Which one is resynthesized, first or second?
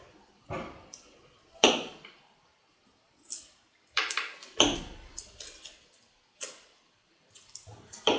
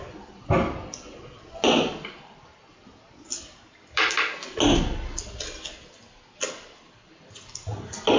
first